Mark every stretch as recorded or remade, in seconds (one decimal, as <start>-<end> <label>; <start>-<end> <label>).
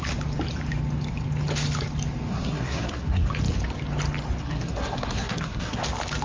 0.0-2.3 recorded; 2.3-3.3 remade; 3.3-4.4 recorded; 4.4-5.8 remade; 5.8-6.2 recorded